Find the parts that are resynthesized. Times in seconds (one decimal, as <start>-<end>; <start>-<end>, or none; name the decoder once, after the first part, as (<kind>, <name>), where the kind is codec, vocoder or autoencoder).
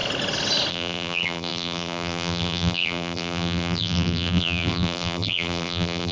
0.7-6.1 (vocoder, BigVGAN v2)